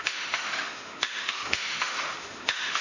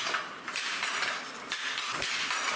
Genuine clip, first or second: second